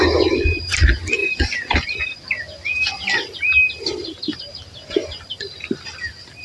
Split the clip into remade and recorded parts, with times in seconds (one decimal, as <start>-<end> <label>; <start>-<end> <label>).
0.0-6.4 recorded